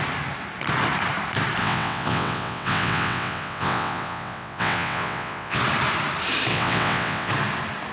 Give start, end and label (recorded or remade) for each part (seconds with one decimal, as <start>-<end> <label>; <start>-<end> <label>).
0.0-1.6 recorded; 1.6-5.6 remade; 5.6-6.5 recorded; 6.5-7.3 remade; 7.3-7.9 recorded